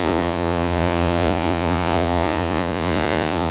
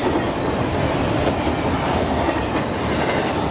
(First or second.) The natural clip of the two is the second